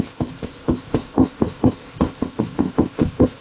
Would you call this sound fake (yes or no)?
yes